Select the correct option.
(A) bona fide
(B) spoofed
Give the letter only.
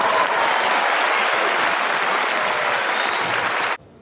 A